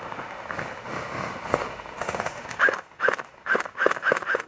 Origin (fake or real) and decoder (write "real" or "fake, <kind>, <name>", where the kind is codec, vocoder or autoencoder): fake, autoencoder, DAC-VAE